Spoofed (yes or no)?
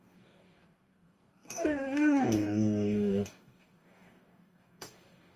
yes